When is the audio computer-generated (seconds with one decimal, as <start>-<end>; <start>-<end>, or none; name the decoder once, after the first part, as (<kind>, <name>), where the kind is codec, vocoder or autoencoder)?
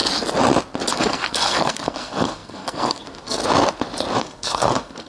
1.0-3.4 (codec, SNAC); 4.2-5.1